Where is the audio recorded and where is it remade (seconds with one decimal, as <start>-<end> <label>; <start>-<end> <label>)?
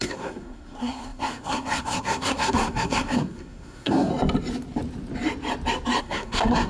0.0-4.1 remade; 4.1-6.0 recorded; 6.0-6.7 remade